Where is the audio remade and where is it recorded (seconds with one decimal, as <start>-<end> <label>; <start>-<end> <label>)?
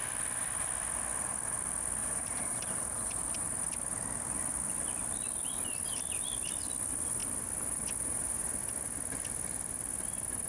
0.0-2.0 recorded; 2.0-3.6 remade; 3.6-10.5 recorded